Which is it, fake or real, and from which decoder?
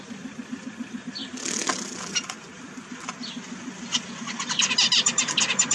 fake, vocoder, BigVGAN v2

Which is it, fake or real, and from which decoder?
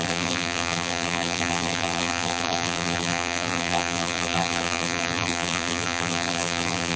fake, vocoder, BigVGAN v2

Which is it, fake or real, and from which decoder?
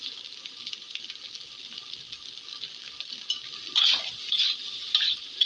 real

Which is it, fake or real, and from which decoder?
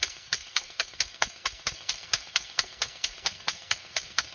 fake, codec, SNAC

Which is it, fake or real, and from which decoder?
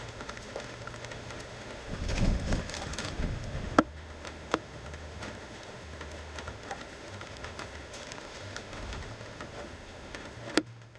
fake, autoencoder, DAC-VAE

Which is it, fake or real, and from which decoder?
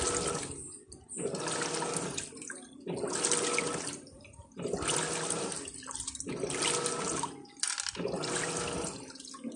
real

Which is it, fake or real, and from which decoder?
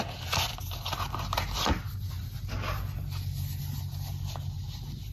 real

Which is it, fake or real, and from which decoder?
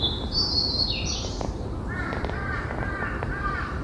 fake, vocoder, BigVGAN v2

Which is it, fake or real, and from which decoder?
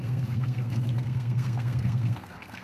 fake, codec, SNAC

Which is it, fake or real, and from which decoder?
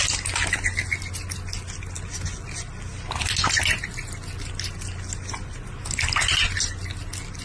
real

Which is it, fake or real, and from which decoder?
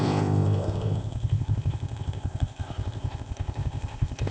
fake, codec, ZipCodec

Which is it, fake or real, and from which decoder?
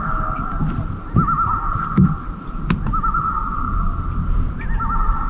real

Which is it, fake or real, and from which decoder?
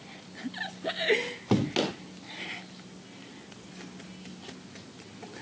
real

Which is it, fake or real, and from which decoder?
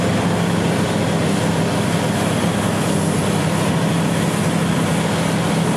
real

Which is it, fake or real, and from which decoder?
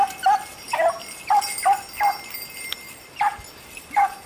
real